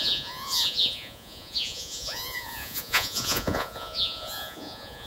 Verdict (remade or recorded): remade